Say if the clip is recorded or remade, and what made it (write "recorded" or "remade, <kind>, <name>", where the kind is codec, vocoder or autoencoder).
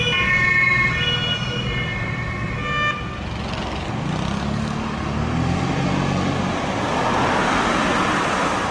recorded